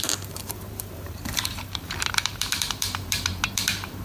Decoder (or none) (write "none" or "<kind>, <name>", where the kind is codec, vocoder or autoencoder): vocoder, BigVGAN v2